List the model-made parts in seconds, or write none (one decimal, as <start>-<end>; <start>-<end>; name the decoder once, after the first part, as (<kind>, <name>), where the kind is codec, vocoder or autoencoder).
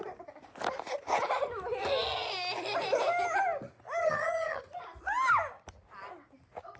4.0-4.6 (vocoder, HiFi-GAN)